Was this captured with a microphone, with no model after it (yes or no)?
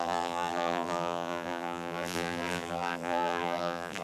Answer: no